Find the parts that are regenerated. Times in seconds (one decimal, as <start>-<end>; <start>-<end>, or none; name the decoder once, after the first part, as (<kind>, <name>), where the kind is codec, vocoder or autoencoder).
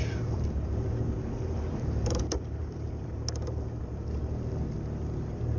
0.0-3.2 (vocoder, BigVGAN v2)